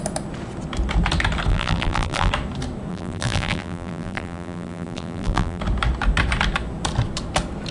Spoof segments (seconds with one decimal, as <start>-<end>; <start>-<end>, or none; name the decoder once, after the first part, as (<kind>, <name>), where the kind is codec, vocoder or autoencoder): 1.5-2.3 (vocoder, BigVGAN v2); 2.9-5.6